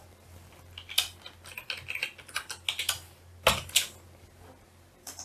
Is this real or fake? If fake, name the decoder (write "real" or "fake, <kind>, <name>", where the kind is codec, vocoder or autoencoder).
real